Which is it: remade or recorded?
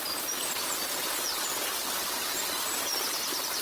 recorded